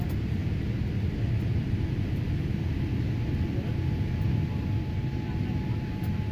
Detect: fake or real real